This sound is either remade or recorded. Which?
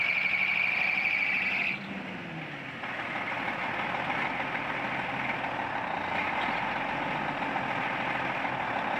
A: recorded